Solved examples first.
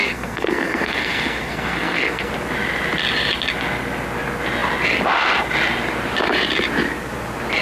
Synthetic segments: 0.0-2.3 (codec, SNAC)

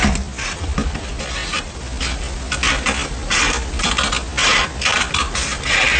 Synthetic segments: none

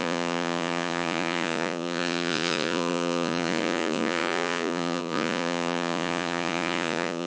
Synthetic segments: 0.0-7.3 (vocoder, Vocos)

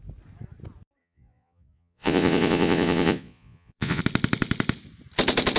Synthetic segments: 1.0-4.0 (vocoder, Vocos)

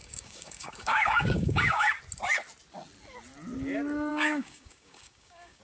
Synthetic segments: 0.0-2.0 (codec, DAC); 4.1-5.6